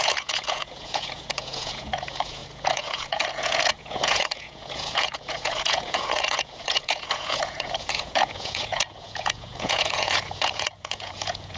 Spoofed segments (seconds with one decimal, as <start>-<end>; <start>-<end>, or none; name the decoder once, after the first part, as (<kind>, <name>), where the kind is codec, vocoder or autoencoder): 0.0-11.6 (vocoder, Vocos)